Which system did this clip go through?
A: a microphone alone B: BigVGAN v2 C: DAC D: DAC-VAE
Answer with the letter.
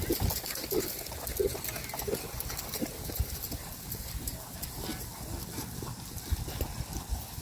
A